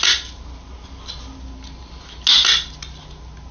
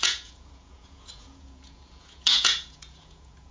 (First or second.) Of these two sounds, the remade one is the second